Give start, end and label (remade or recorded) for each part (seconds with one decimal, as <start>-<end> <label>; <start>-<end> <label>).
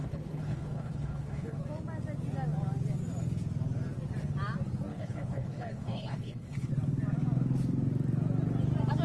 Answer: 0.0-1.6 remade; 1.6-4.9 recorded; 4.9-6.7 remade; 6.7-9.0 recorded